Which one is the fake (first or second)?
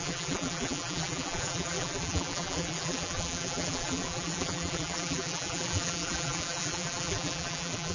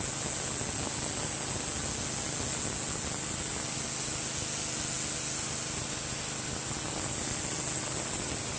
first